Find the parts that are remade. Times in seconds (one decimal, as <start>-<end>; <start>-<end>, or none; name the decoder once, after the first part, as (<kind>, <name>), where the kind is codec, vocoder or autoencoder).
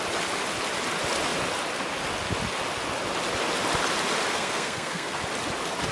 4.3-5.2 (codec, SNAC)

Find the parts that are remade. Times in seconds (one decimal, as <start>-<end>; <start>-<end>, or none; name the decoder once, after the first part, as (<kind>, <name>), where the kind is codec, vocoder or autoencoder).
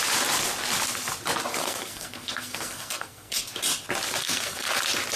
1.5-3.4 (codec, SNAC); 4.2-4.7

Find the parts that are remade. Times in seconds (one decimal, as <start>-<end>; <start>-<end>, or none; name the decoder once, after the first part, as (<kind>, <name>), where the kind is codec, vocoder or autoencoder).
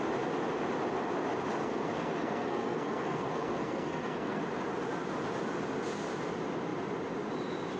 1.6-4.4 (codec, SNAC)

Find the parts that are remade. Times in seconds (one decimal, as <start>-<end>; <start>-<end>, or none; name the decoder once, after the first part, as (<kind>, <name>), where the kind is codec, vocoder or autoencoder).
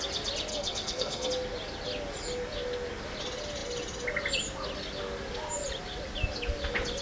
0.5-1.3 (codec, SNAC)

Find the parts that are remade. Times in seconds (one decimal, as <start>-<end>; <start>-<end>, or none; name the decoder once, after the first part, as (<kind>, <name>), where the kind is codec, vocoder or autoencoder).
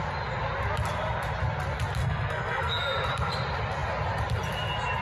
2.0-2.7 (codec, SNAC)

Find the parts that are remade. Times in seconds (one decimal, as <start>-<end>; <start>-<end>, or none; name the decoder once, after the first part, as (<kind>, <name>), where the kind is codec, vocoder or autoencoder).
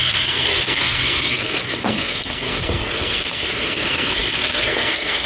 0.0-5.3 (codec, SNAC)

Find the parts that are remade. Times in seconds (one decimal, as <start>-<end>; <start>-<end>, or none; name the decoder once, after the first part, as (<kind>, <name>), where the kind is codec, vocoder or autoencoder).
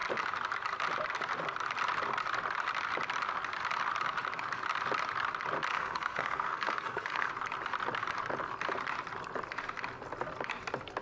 5.7-7.3 (codec, SNAC)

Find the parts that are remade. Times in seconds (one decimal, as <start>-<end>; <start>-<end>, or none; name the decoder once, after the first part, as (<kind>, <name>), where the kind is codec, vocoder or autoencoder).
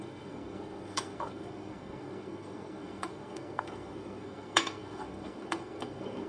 0.0-6.3 (codec, SNAC)